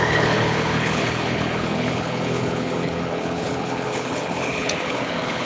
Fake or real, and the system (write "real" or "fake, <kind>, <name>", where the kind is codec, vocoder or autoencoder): fake, codec, HILCodec